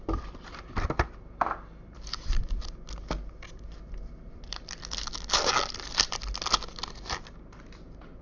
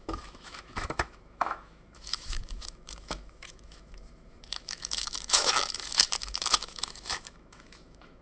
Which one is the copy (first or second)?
second